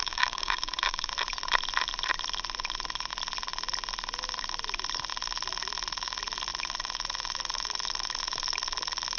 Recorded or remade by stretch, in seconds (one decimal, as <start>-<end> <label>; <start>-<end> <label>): 0.0-1.1 remade; 1.1-9.2 recorded